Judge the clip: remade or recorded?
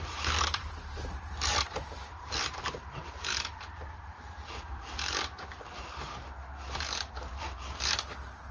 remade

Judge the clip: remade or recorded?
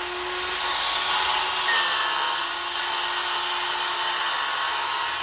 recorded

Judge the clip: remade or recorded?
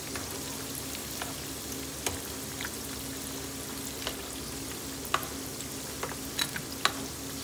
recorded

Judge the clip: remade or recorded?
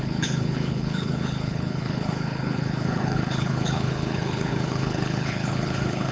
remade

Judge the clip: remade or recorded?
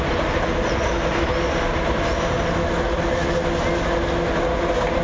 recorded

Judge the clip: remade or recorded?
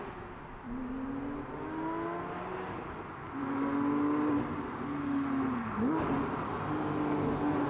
recorded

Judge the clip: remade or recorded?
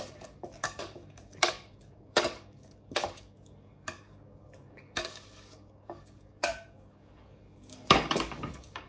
remade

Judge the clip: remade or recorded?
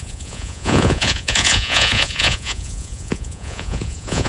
remade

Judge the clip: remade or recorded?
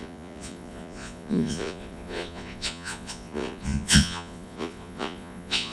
remade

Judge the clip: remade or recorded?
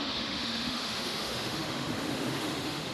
remade